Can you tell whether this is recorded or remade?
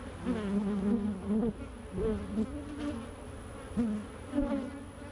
recorded